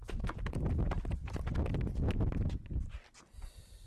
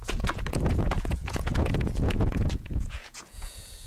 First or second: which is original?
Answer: first